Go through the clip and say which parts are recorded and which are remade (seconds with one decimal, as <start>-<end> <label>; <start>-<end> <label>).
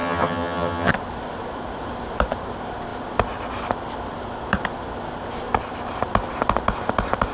0.0-0.9 remade; 0.9-7.3 recorded